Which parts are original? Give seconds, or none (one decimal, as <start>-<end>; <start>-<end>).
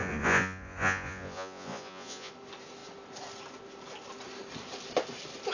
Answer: 2.3-5.5